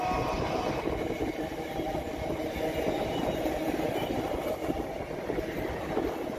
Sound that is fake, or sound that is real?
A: fake